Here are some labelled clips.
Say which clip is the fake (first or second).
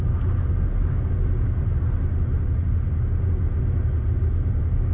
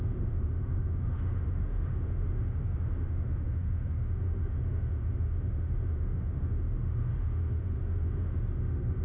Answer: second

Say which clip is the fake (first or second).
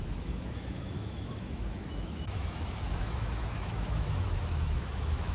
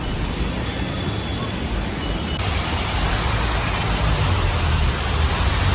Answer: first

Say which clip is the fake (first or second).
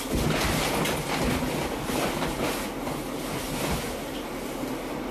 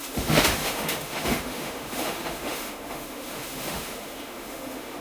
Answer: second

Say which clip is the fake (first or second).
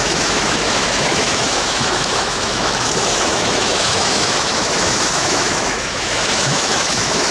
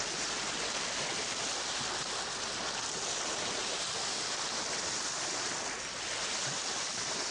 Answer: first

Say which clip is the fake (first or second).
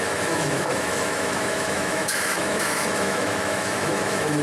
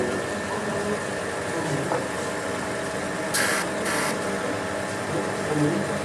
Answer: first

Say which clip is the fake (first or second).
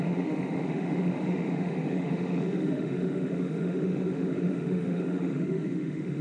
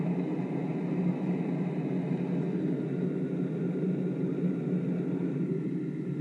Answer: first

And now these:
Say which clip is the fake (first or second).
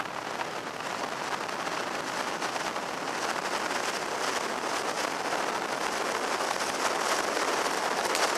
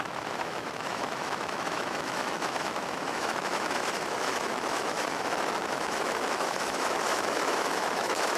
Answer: second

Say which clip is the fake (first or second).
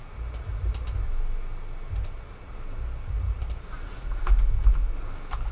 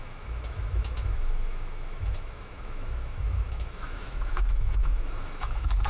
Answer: second